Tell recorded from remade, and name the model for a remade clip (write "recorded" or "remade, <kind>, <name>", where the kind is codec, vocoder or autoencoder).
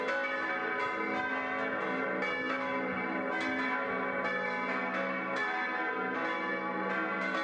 recorded